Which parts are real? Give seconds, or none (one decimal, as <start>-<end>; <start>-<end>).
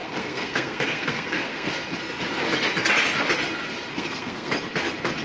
1.7-3.9; 4.5-5.2